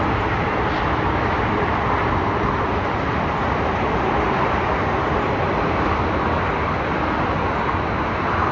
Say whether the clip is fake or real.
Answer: real